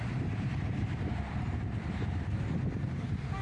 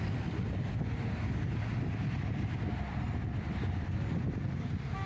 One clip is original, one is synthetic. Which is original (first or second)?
second